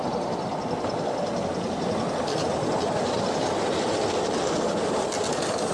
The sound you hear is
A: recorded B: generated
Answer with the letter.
A